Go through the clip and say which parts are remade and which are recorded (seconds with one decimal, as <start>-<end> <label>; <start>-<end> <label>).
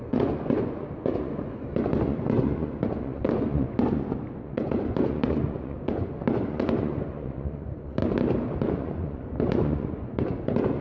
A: 0.0-8.0 remade; 8.0-8.7 recorded; 8.7-10.8 remade